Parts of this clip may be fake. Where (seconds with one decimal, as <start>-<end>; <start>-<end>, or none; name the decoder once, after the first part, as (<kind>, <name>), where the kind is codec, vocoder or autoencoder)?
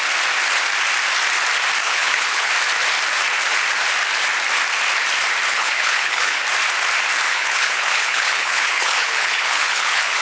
1.8-2.5 (codec, HILCodec); 5.5-6.4; 7.3-10.2